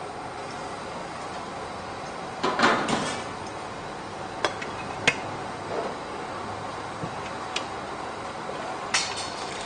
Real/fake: real